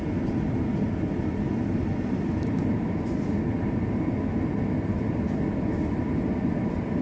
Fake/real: real